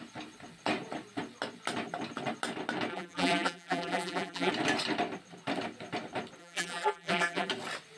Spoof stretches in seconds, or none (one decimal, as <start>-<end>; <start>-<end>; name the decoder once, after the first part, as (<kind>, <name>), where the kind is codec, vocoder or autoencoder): 2.9-4.5 (vocoder, BigVGAN v2); 6.4-7.5